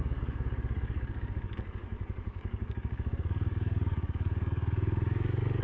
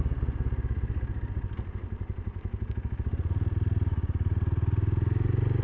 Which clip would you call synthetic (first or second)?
first